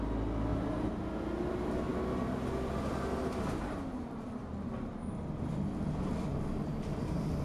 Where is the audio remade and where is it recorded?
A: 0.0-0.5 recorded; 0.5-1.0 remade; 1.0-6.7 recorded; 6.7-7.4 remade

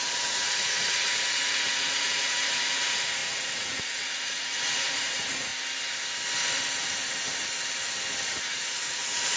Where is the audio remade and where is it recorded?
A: 0.0-5.5 remade; 5.5-8.4 recorded; 8.4-9.4 remade

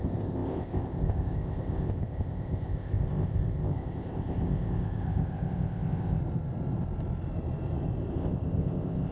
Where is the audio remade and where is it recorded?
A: 0.0-6.2 remade; 6.2-8.1 recorded; 8.1-9.1 remade

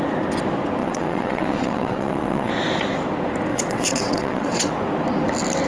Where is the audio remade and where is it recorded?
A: 0.0-0.8 recorded; 0.8-2.5 remade; 2.5-3.5 recorded; 3.5-4.7 remade; 4.7-5.7 recorded

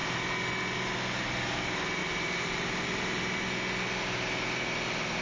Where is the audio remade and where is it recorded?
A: 0.0-2.0 recorded; 2.0-3.5 remade; 3.5-5.2 recorded